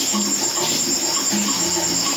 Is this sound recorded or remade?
recorded